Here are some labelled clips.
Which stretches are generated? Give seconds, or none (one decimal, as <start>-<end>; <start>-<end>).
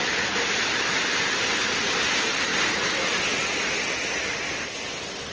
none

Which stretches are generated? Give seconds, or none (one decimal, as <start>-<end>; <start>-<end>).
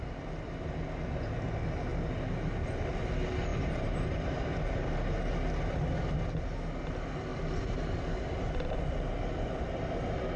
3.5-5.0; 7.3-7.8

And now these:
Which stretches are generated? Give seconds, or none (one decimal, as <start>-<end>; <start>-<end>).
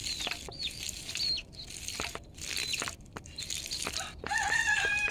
0.0-5.1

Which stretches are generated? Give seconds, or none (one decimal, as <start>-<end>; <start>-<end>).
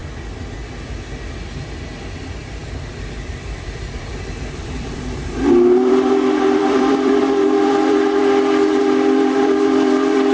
2.2-8.2; 8.8-10.3